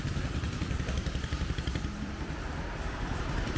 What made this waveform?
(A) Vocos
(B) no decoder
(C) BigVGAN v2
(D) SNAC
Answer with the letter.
C